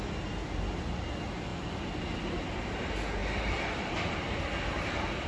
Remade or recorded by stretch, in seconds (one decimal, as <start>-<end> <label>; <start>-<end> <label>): 0.0-3.2 recorded; 3.2-4.1 remade; 4.1-5.3 recorded